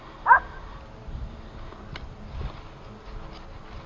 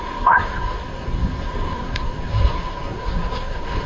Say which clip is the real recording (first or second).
first